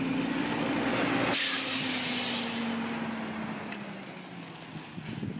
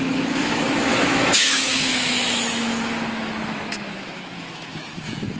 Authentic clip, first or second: first